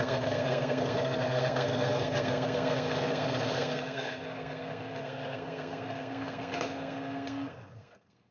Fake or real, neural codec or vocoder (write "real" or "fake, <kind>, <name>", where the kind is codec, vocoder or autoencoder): fake, codec, SNAC